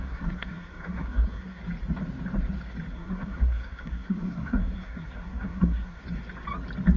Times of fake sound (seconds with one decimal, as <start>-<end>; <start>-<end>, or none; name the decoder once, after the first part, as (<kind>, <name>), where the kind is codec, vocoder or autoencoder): 0.0-1.6 (codec, SNAC); 2.9-6.0